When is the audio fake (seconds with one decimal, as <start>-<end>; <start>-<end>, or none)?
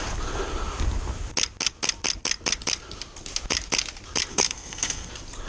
4.3-5.1